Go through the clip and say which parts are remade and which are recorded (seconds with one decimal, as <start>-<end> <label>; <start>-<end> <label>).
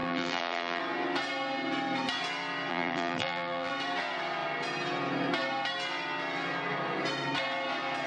0.0-0.8 remade; 0.8-2.7 recorded; 2.7-3.7 remade; 3.7-8.1 recorded